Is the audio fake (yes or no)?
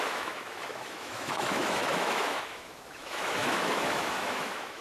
yes